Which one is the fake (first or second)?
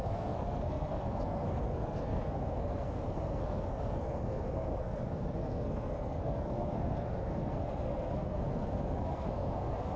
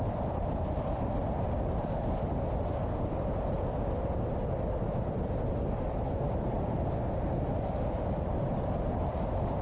first